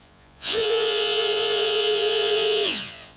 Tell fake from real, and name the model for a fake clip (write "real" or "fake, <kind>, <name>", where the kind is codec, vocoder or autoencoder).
fake, vocoder, Vocos